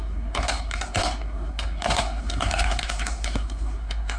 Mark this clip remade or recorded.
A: remade